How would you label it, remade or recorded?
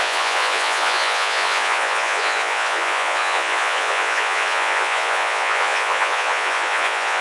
remade